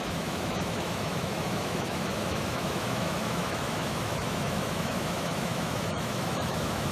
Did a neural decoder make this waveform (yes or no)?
yes